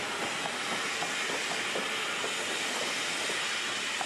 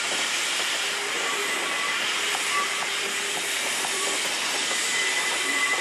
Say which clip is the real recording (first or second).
first